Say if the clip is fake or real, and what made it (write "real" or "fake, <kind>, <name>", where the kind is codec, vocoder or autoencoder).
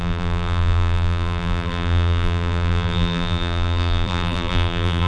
fake, vocoder, BigVGAN v2